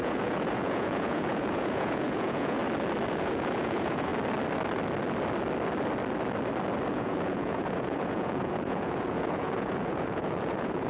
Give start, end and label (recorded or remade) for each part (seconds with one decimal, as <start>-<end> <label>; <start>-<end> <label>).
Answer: 0.0-2.6 remade; 2.6-3.1 recorded; 3.1-4.1 remade; 4.1-6.9 recorded; 6.9-10.9 remade